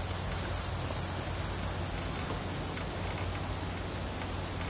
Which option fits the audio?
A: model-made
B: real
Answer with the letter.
B